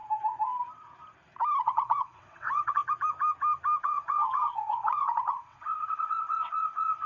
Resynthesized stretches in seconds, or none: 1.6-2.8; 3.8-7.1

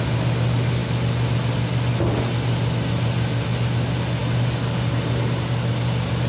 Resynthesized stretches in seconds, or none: none

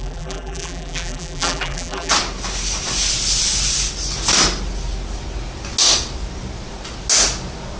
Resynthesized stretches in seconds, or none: 0.0-2.1

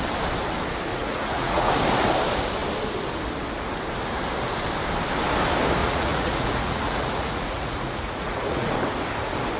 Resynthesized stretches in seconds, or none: 0.9-1.7; 5.8-8.8

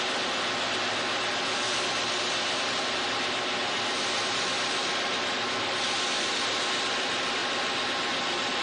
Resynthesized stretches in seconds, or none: 7.4-8.6